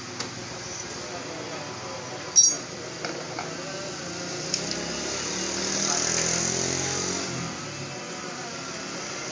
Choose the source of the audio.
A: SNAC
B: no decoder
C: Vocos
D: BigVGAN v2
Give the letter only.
B